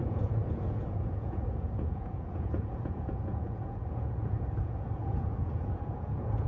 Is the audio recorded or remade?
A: remade